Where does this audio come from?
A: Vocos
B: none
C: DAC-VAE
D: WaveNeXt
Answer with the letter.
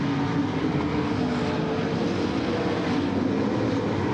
B